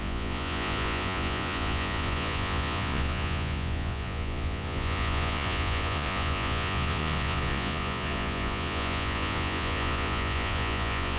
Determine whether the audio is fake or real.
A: fake